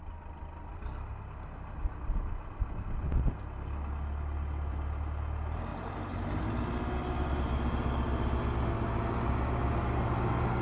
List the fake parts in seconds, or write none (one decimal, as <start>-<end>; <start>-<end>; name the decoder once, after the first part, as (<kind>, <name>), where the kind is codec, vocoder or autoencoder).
5.7-6.4 (vocoder, BigVGAN v2)